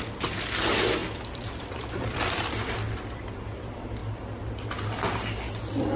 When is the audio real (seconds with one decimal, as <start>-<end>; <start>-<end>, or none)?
4.0-5.5